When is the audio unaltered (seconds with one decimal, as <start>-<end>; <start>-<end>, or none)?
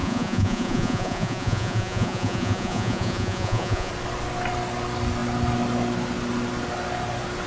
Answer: 3.9-7.5